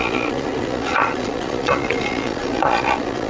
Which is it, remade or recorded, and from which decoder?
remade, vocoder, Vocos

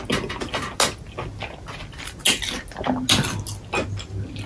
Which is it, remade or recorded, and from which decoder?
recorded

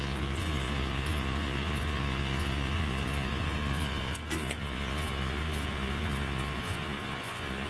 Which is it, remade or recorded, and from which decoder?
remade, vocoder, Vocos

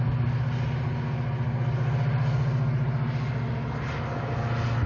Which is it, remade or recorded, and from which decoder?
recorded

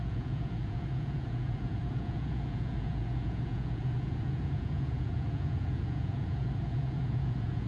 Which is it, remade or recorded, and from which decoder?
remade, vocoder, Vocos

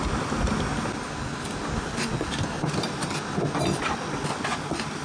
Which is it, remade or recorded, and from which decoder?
recorded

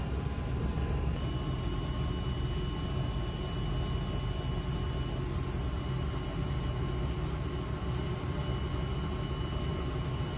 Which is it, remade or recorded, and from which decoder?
recorded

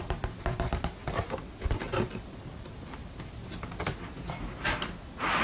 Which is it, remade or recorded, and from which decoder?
recorded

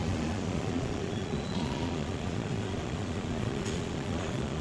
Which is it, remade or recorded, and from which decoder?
remade, vocoder, Vocos